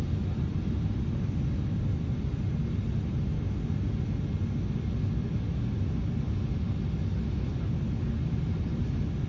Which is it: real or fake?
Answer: real